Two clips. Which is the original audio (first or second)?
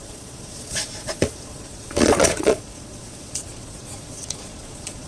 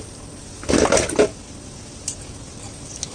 second